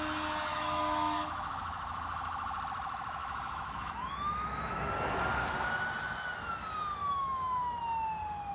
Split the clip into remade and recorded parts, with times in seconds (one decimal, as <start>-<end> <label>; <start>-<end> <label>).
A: 0.0-0.5 recorded; 0.5-2.6 remade; 2.6-3.2 recorded; 3.2-4.9 remade; 4.9-7.0 recorded; 7.0-7.8 remade; 7.8-8.5 recorded